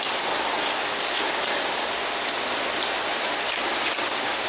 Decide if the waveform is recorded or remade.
recorded